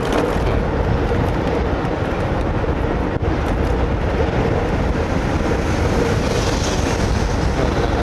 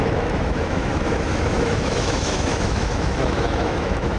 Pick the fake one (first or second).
second